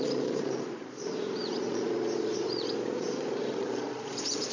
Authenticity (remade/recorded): remade